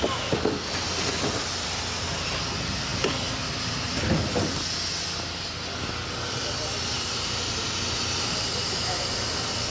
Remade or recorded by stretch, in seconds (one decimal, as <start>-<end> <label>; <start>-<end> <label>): 0.0-9.7 recorded